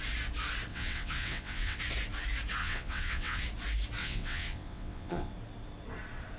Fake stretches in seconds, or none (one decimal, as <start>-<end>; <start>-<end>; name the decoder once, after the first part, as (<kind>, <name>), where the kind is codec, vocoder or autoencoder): 0.7-1.8 (vocoder, WaveNeXt); 2.6-3.4; 4.0-5.3